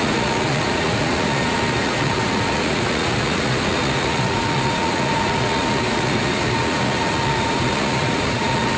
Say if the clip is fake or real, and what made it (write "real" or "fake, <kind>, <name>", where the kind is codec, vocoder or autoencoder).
fake, vocoder, Vocos